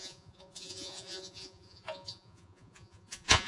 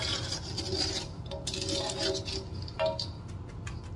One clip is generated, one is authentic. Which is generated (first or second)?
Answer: first